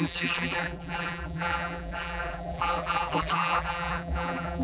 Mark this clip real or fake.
fake